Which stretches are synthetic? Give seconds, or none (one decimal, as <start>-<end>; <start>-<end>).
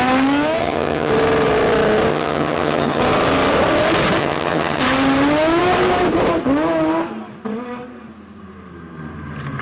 0.6-1.1; 2.1-3.0; 4.2-4.8